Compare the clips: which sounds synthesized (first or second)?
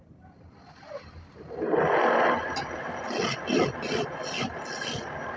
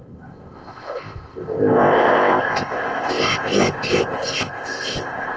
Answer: second